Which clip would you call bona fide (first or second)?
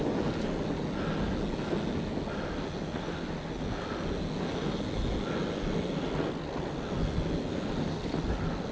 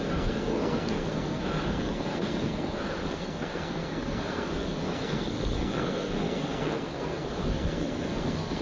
first